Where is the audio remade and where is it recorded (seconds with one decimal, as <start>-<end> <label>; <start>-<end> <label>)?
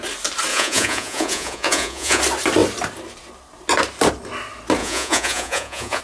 0.0-0.5 recorded; 0.5-2.2 remade; 2.2-4.8 recorded; 4.8-6.0 remade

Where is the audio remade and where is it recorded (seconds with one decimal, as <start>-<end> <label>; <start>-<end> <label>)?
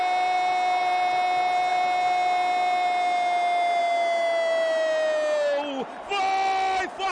0.0-7.1 recorded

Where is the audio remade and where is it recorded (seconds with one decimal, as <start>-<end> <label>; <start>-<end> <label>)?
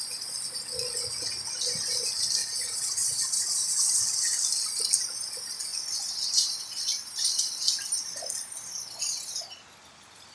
0.0-2.4 recorded; 2.4-4.0 remade; 4.0-10.3 recorded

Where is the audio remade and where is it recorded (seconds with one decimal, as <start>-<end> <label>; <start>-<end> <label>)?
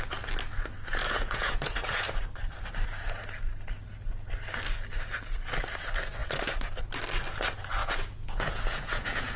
0.0-0.9 recorded; 0.9-2.2 remade; 2.2-7.8 recorded; 7.8-9.4 remade